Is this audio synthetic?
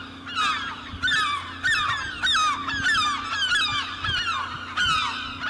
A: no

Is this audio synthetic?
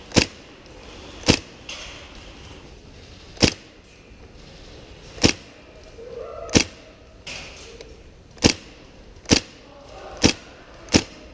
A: no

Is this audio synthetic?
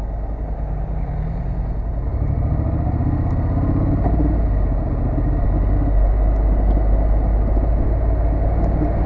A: no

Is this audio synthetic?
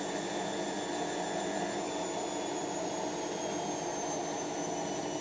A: no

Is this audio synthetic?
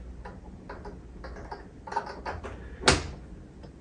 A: no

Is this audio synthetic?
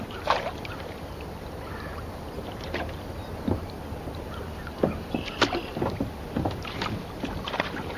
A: yes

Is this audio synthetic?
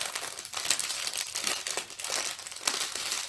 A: no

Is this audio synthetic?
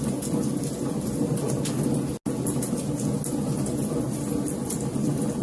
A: no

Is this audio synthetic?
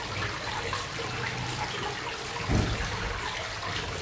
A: no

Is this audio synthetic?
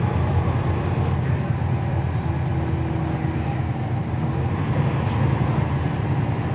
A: no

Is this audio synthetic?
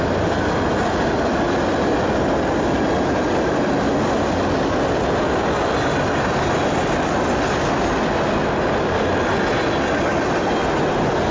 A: no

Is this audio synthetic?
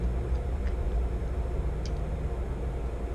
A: no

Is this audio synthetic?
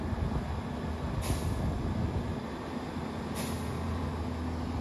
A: no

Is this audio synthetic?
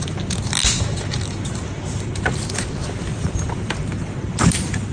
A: yes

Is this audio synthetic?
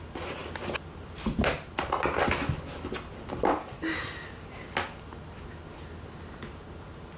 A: no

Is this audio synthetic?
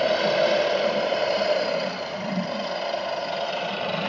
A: no